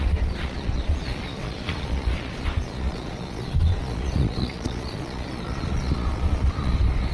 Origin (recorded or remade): remade